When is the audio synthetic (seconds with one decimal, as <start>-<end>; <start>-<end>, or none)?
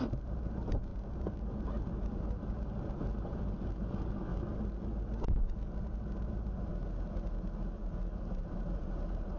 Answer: 0.0-4.3; 5.8-6.7; 8.3-9.4